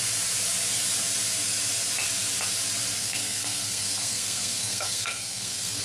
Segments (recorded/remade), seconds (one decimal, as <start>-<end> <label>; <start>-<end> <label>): 0.0-3.0 recorded; 3.0-5.8 remade